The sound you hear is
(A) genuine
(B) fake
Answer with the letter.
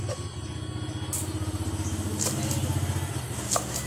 A